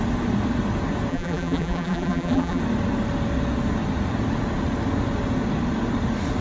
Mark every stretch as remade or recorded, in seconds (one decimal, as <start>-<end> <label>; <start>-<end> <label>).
0.0-1.1 recorded; 1.1-2.6 remade; 2.6-6.4 recorded